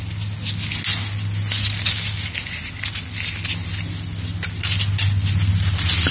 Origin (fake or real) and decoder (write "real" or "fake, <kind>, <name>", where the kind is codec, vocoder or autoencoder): real